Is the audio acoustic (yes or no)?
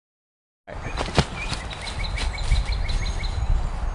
yes